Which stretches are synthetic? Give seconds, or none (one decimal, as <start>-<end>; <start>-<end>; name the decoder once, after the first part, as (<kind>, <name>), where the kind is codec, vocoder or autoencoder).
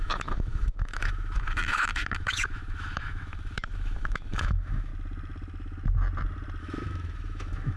0.0-4.9 (autoencoder, DAC-VAE); 6.6-7.8